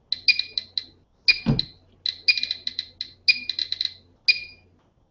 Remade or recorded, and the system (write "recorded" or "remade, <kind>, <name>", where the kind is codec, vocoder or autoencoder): recorded